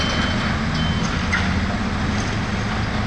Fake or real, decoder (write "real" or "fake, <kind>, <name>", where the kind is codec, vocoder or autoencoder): real